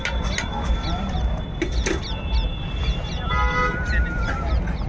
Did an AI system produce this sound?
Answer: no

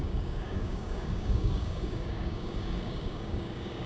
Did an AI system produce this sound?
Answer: yes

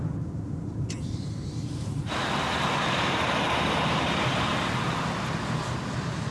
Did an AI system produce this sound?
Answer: no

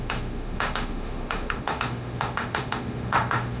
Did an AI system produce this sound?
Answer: yes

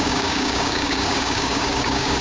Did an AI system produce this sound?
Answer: yes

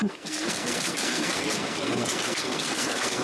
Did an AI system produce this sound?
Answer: yes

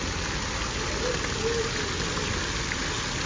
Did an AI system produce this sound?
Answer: no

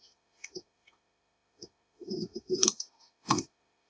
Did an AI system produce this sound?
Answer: yes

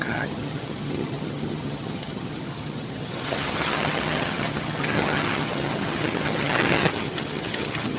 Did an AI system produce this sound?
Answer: yes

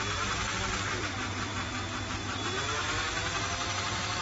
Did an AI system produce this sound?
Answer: no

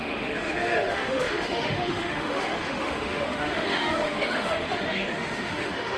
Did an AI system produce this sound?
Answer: yes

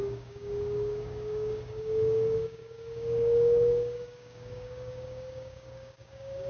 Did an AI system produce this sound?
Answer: yes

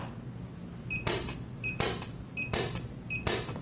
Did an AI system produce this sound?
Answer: no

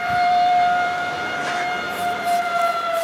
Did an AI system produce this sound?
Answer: yes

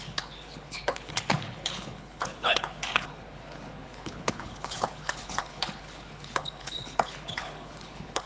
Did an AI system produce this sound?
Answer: yes